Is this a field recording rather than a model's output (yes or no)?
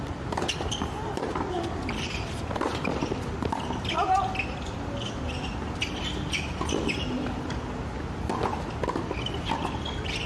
yes